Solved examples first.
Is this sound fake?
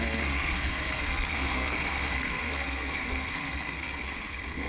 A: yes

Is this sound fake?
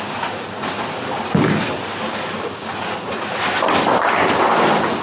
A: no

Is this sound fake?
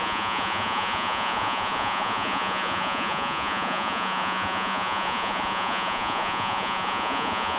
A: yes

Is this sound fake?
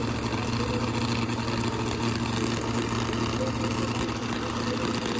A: no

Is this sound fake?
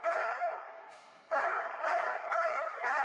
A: yes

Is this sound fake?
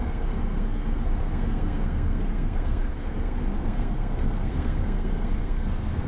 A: yes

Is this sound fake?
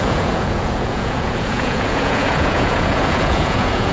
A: yes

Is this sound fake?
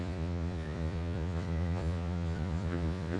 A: yes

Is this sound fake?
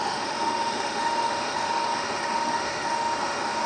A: yes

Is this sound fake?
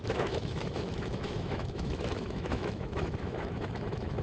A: yes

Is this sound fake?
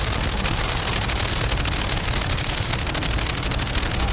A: yes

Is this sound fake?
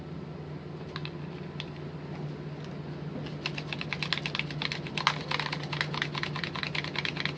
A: no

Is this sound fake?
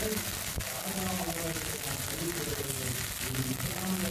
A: no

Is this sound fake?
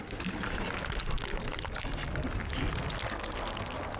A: no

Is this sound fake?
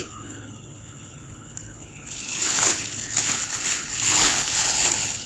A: yes